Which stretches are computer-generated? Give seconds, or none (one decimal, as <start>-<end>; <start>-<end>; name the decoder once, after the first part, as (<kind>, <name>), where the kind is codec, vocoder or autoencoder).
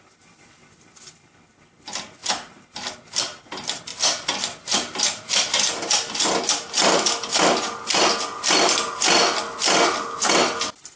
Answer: none